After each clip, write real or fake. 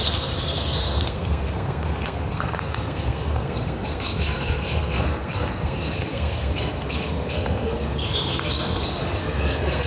fake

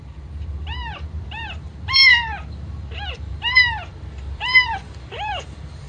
fake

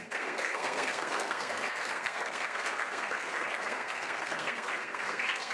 fake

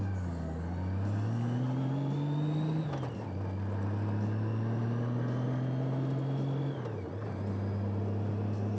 real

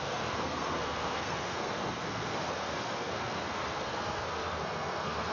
fake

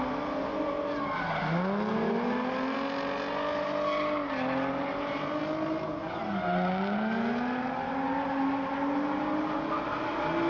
real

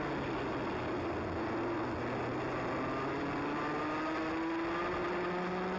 real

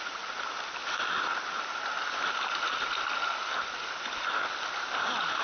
real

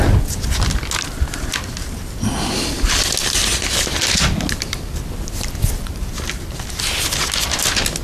real